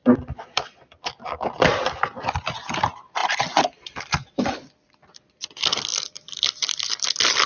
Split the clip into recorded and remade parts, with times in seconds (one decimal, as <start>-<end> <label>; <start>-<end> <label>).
0.0-1.1 remade; 1.1-3.2 recorded; 3.2-4.9 remade; 4.9-5.9 recorded; 5.9-6.9 remade; 6.9-7.5 recorded